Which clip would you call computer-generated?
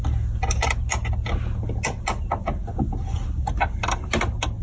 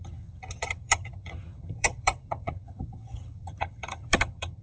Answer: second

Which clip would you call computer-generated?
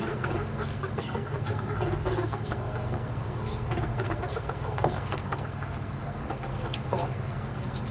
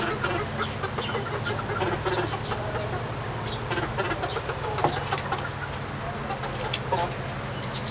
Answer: first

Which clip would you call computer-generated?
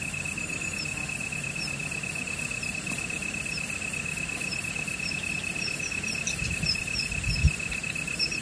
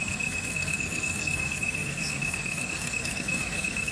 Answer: second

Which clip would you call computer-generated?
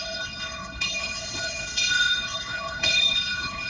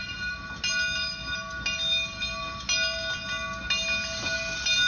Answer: first